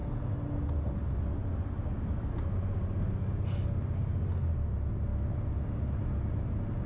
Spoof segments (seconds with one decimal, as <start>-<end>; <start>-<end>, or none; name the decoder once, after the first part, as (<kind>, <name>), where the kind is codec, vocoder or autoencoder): none